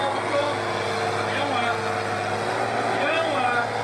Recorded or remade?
recorded